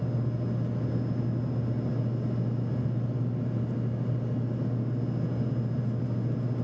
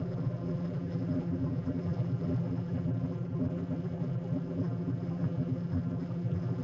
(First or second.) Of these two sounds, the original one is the first